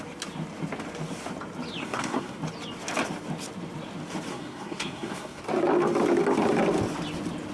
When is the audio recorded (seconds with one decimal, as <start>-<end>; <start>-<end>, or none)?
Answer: 0.0-1.8; 2.4-4.3; 5.4-7.5